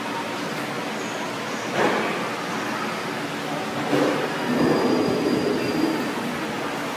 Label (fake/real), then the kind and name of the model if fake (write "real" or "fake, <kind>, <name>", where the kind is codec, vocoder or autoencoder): real